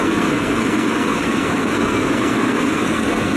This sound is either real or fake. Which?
fake